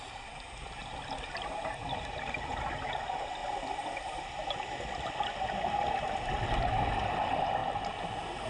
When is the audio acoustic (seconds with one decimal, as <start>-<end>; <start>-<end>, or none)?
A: 0.0-3.4; 5.9-7.6